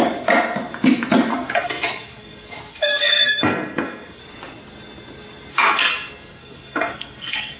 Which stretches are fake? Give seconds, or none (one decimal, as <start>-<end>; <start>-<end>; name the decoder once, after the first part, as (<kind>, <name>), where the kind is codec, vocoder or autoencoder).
1.3-4.2 (codec, SNAC); 5.5-7.6